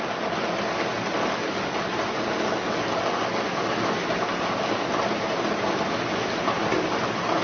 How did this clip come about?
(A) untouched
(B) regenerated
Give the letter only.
A